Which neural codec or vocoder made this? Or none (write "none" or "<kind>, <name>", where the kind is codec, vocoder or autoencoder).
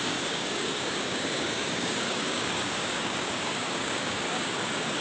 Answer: codec, DAC